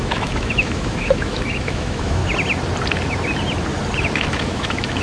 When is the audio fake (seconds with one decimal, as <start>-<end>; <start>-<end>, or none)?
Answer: 0.0-2.2; 4.0-5.0